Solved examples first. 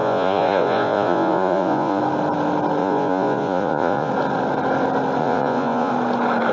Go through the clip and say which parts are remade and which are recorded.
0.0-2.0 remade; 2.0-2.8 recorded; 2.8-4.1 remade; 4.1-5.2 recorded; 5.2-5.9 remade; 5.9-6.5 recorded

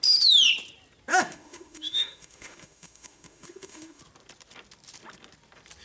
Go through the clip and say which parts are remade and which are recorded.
0.0-1.1 recorded; 1.1-4.0 remade; 4.0-5.8 recorded

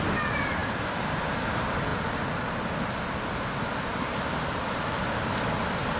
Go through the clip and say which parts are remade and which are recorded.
0.0-6.0 recorded

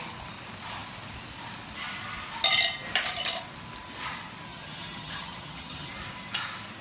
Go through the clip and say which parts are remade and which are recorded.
0.0-4.5 recorded; 4.5-5.9 remade; 5.9-6.8 recorded

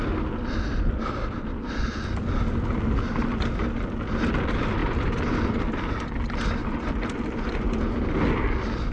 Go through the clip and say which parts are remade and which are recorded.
0.0-8.9 recorded